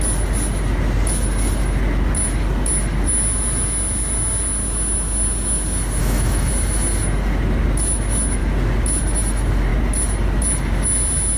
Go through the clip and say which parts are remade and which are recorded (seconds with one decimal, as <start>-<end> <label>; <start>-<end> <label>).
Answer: 0.0-6.0 recorded; 6.0-6.5 remade; 6.5-11.4 recorded